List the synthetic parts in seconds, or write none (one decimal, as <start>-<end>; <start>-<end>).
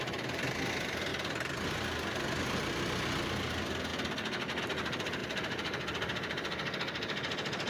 none